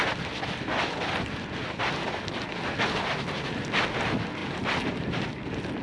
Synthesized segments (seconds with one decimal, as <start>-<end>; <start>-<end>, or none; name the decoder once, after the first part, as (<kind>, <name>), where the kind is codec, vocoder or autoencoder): 4.4-5.8 (vocoder, BigVGAN v2)